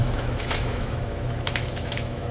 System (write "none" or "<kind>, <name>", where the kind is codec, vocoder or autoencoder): autoencoder, DAC-VAE